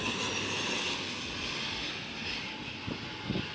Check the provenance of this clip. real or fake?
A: real